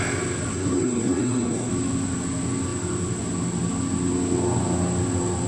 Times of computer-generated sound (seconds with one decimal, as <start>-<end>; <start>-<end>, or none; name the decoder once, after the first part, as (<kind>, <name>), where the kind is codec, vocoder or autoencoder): 0.5-1.7 (codec, SNAC)